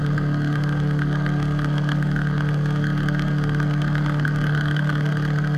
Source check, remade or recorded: remade